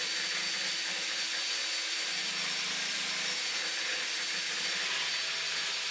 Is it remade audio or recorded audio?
recorded